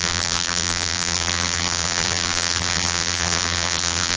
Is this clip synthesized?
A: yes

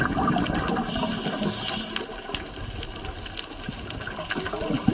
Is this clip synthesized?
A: no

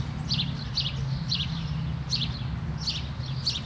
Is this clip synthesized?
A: no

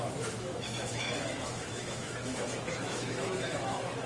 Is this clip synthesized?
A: yes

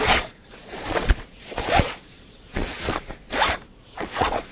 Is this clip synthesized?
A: yes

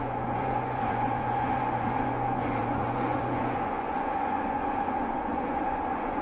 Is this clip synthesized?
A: yes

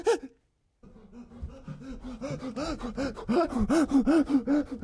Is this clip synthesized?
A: no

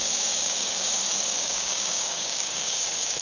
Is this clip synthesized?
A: yes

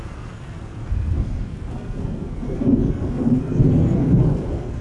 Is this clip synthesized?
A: yes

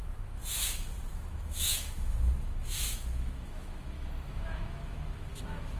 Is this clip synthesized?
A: yes